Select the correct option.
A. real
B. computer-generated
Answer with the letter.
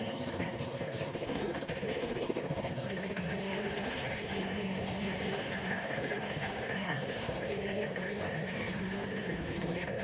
B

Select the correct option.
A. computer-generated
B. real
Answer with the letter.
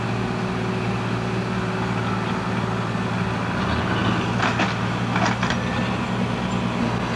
B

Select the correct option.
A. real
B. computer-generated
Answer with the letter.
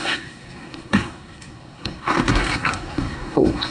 B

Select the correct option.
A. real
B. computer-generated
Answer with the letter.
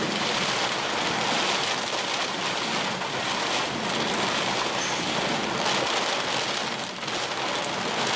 A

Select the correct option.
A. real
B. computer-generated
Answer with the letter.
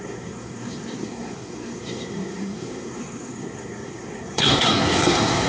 B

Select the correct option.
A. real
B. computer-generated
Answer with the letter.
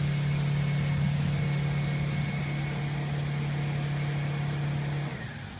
A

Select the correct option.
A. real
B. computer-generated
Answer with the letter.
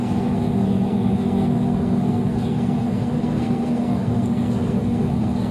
B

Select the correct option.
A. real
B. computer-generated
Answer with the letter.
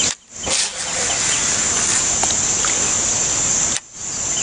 A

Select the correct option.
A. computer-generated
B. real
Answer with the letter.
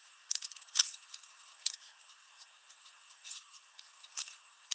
A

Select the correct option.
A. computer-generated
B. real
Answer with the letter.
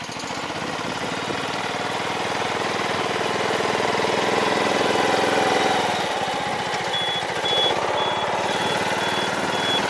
B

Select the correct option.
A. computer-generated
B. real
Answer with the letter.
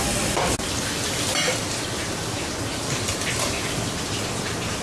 B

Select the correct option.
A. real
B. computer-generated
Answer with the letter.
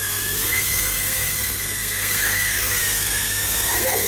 B